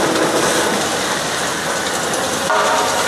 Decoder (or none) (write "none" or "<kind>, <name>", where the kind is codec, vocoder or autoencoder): none